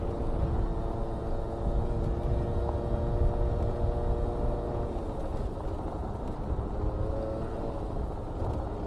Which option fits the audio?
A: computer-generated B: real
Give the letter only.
B